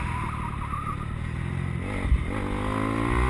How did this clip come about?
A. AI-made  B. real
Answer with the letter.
B